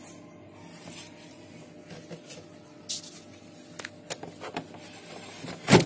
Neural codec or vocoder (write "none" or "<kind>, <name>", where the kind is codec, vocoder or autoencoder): none